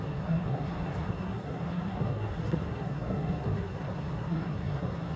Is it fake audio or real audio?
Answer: fake